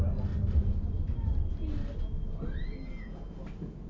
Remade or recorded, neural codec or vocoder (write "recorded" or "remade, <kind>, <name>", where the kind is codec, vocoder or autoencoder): recorded